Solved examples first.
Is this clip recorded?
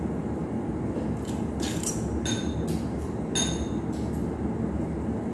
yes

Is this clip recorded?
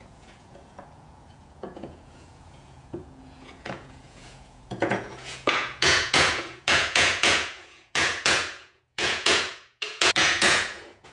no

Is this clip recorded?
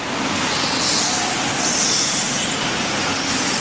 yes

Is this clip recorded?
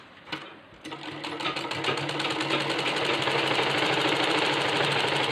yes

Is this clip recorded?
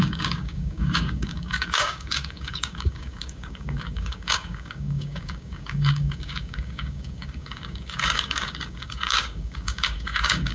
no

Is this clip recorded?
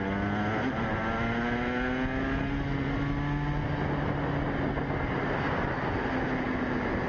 yes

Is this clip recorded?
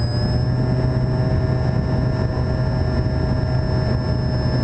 yes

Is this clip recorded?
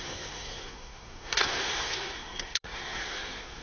no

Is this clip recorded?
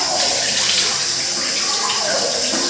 yes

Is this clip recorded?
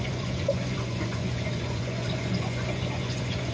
no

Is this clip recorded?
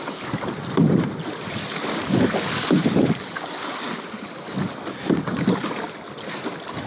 yes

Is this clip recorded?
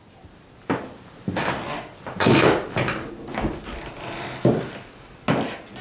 yes